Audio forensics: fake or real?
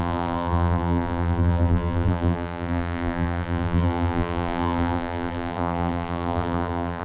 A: fake